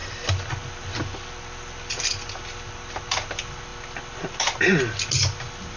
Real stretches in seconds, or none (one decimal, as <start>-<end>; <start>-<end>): 0.0-5.8